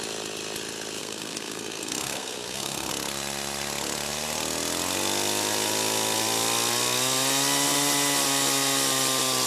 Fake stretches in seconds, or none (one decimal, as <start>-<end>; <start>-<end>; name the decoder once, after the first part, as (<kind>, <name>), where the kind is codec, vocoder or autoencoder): 1.0-2.9 (codec, SNAC)